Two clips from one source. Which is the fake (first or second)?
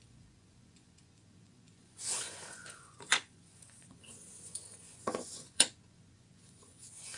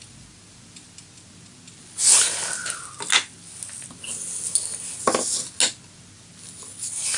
first